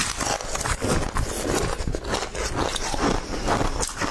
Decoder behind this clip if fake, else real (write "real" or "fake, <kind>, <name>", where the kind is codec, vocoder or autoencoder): real